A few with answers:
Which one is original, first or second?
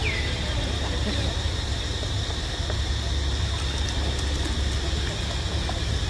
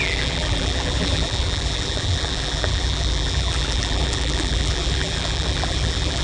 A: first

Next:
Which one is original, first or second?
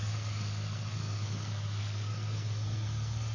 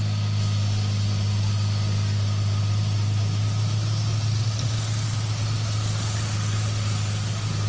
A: second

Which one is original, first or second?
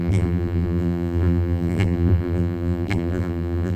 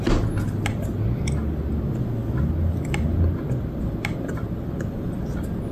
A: second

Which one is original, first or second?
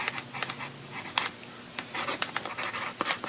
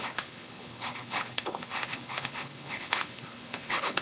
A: first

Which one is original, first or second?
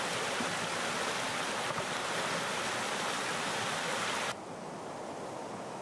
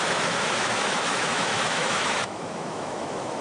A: first